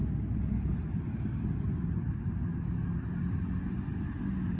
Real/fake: real